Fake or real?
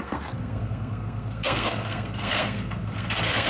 fake